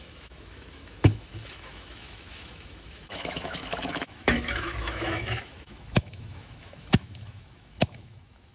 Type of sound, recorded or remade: remade